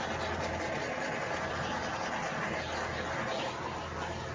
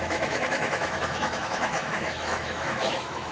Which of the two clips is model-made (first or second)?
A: second